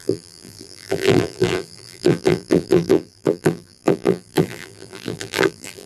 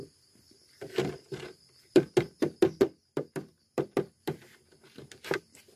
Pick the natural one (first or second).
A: second